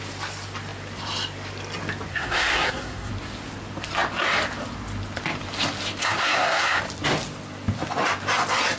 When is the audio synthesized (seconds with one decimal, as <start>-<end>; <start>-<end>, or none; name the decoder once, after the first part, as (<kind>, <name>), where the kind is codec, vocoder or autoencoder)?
2.1-3.1 (codec, SNAC); 6.0-6.8